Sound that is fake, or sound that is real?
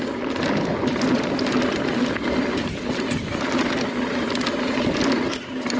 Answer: real